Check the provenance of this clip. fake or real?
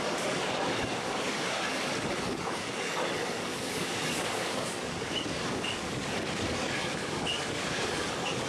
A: fake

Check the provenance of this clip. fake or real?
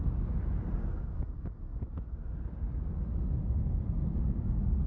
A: real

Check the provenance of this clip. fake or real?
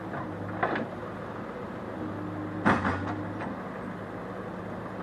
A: real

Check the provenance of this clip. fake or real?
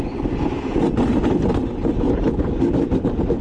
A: real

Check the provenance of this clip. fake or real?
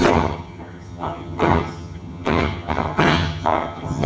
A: fake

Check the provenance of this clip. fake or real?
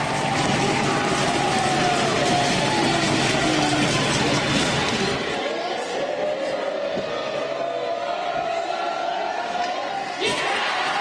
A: real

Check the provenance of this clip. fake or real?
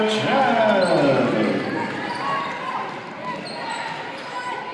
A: real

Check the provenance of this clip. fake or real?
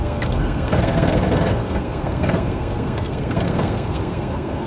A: fake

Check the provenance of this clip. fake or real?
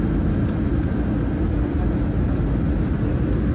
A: real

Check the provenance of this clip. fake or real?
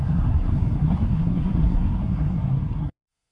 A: fake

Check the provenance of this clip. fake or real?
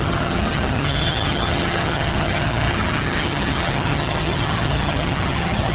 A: fake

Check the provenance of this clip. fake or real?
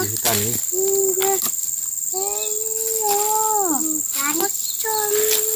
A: real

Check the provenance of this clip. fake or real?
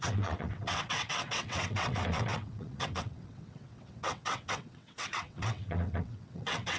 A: fake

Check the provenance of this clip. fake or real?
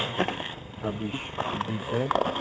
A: fake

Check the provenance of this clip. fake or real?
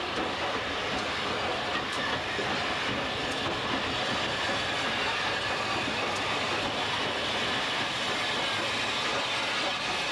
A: real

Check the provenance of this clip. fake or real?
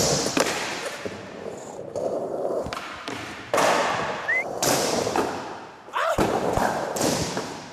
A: fake